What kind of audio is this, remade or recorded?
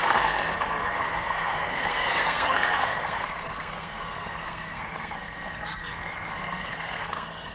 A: remade